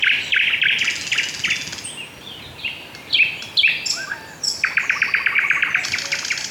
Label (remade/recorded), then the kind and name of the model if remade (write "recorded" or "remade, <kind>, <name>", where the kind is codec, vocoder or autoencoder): recorded